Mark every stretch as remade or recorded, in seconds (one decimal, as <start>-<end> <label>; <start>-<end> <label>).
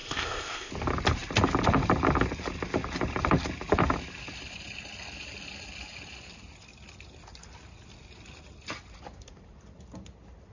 0.0-0.7 remade; 0.7-10.5 recorded